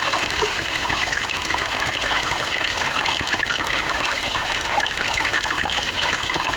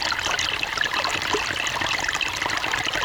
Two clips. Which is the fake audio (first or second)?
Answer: first